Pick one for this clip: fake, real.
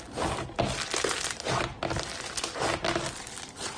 real